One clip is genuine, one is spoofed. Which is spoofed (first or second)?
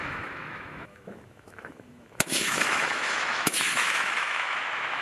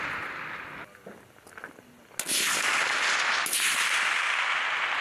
first